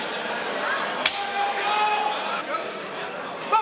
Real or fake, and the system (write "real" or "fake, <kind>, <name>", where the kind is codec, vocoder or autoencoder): real